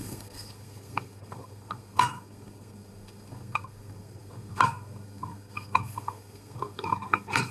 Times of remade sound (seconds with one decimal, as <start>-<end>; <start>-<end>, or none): 0.0-7.5